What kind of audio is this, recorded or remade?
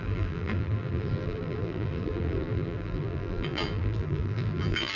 remade